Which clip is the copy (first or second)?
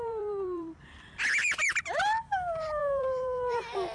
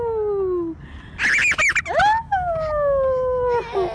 first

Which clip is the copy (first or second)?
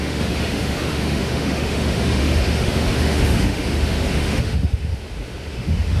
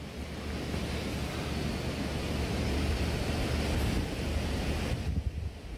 first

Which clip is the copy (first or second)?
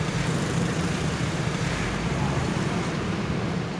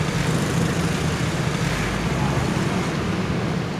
first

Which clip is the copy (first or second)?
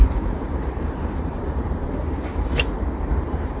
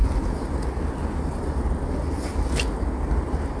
first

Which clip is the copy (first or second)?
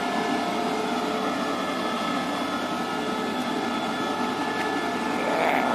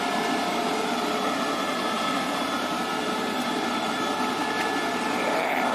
second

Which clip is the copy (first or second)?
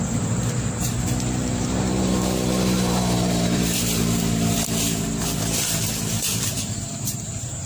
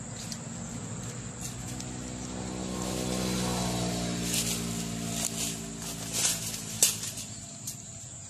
first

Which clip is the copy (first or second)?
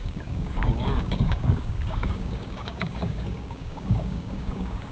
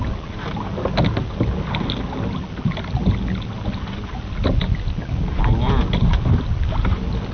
first